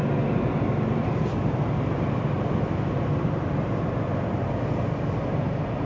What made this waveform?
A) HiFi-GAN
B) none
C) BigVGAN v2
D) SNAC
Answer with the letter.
B